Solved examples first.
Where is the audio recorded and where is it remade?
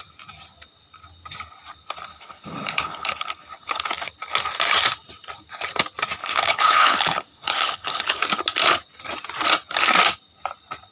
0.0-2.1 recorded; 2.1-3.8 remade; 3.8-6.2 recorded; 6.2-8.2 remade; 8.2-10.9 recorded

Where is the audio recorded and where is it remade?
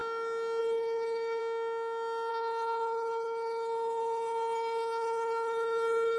0.0-0.6 recorded; 0.6-1.4 remade; 1.4-2.3 recorded; 2.3-6.2 remade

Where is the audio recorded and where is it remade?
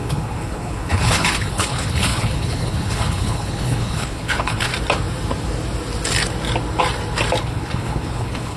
0.0-4.7 remade; 4.7-7.4 recorded; 7.4-8.6 remade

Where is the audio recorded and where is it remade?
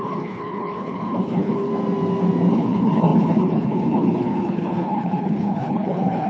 0.0-1.7 remade; 1.7-2.5 recorded; 2.5-6.3 remade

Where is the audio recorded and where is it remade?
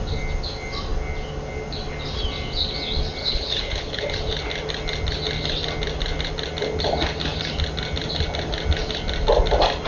0.0-3.2 recorded; 3.2-4.1 remade; 4.1-9.9 recorded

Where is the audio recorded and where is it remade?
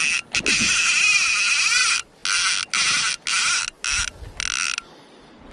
0.0-5.5 recorded